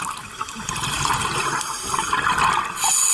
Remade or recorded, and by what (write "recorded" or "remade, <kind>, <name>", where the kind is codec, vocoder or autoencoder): recorded